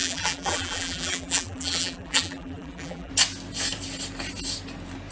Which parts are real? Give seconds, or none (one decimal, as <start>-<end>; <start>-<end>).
3.1-5.1